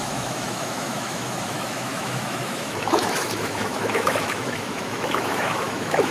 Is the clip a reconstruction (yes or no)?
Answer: yes